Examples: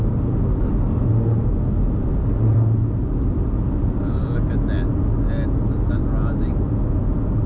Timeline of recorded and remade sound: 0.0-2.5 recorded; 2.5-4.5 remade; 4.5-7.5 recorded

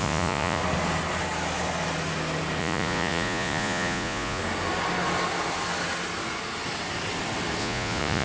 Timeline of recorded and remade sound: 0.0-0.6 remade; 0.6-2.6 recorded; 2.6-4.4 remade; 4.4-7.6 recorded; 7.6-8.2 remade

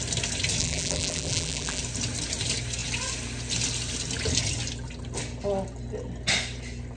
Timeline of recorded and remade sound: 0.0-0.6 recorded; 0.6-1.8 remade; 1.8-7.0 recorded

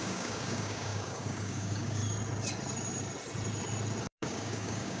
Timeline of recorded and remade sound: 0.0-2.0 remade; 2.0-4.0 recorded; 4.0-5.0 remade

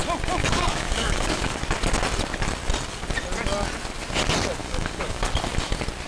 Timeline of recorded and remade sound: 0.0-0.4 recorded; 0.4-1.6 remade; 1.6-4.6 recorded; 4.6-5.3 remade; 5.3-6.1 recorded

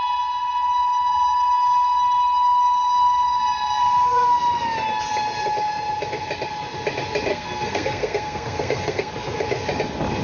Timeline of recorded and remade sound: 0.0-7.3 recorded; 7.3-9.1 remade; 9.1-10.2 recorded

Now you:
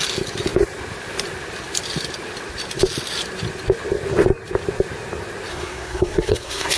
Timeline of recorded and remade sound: 0.0-5.5 recorded; 5.5-6.8 remade

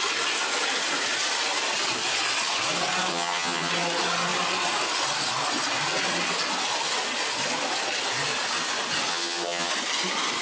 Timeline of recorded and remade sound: 0.0-3.1 recorded; 3.1-3.7 remade; 3.7-9.1 recorded; 9.1-9.7 remade; 9.7-10.4 recorded